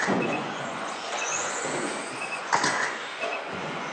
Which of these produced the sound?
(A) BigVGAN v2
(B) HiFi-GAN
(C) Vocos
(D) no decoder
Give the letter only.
C